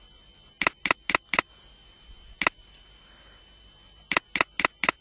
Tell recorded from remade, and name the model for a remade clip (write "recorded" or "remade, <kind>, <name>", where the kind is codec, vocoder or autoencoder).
recorded